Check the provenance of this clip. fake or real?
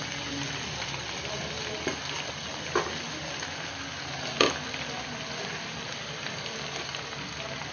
real